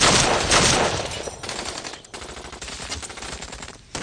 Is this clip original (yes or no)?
yes